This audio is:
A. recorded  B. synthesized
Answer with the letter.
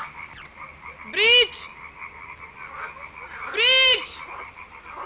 A